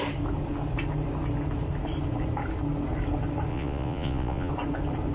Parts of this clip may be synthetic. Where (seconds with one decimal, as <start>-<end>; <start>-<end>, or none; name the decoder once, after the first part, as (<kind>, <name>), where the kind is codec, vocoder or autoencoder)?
3.5-4.5 (vocoder, Vocos)